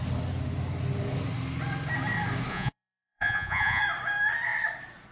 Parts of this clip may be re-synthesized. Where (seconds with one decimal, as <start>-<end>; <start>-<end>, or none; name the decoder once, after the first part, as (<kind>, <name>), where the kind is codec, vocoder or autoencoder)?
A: 2.5-3.8 (vocoder, Vocos)